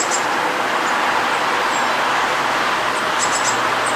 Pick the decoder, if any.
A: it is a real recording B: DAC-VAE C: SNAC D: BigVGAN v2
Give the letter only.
A